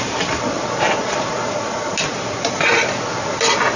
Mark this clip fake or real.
real